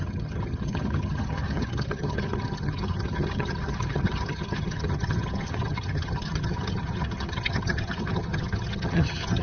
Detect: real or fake fake